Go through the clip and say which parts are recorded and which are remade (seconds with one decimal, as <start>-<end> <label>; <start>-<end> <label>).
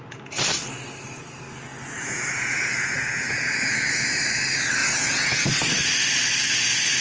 0.0-1.7 recorded; 1.7-4.2 remade; 4.2-4.8 recorded; 4.8-5.5 remade; 5.5-7.0 recorded